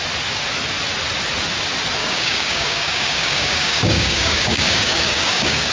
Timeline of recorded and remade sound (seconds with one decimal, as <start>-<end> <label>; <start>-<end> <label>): 0.0-2.0 recorded; 2.0-5.7 remade